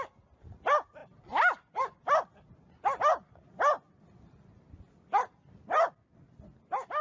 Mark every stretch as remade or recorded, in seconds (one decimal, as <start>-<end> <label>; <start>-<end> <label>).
0.0-7.0 recorded